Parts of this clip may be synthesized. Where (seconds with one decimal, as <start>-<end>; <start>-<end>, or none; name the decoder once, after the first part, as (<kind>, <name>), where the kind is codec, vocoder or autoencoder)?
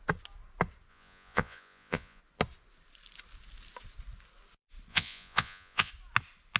0.9-2.2 (vocoder, Vocos); 4.9-5.9